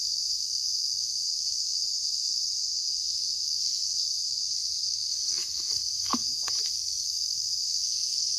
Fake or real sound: fake